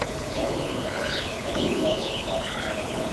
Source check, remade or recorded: remade